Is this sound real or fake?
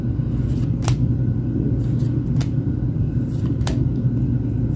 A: real